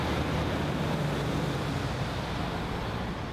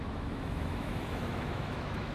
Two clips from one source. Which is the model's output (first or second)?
second